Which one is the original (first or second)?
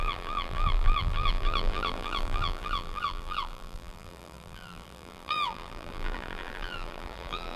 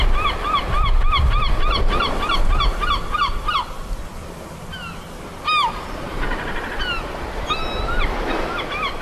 second